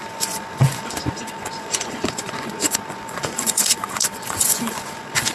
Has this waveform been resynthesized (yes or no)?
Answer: yes